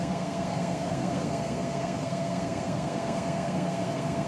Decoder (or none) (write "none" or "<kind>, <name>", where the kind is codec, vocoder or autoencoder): codec, SNAC